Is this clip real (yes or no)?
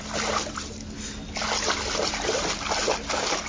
yes